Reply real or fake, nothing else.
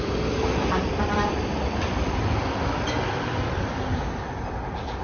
fake